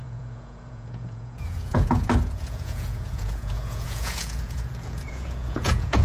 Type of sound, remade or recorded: remade